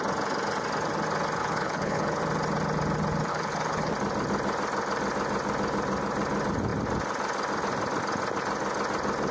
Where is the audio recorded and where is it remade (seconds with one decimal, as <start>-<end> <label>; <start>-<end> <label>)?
0.0-1.4 recorded; 1.4-2.2 remade; 2.2-3.3 recorded; 3.3-3.9 remade; 3.9-9.3 recorded